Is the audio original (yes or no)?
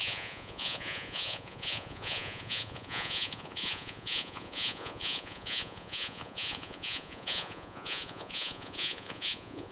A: no